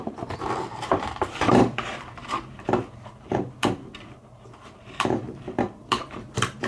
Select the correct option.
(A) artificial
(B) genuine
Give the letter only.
A